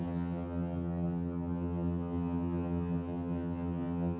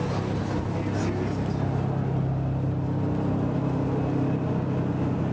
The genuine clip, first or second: second